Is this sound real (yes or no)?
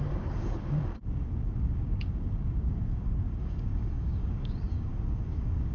no